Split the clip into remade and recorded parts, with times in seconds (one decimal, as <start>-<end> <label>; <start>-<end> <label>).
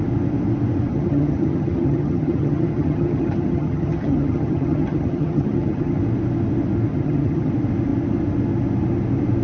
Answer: 0.0-0.9 recorded; 0.9-6.0 remade; 6.0-6.9 recorded; 6.9-7.5 remade; 7.5-9.4 recorded